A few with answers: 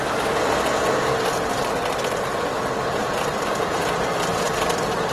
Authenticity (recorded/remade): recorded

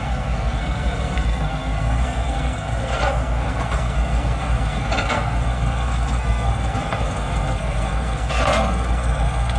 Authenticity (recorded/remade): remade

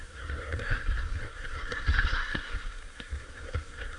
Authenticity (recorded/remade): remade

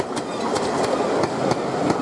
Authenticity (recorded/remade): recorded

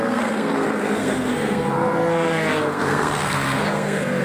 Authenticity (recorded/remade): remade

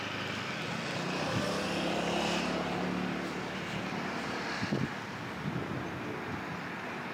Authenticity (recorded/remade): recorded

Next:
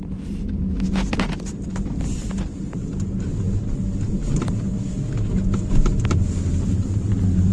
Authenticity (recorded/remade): recorded